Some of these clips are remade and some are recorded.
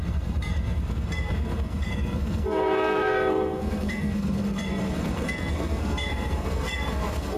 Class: remade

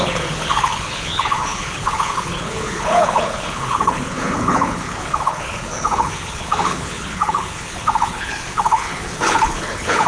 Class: remade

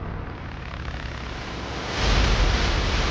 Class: recorded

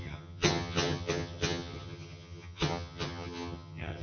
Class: remade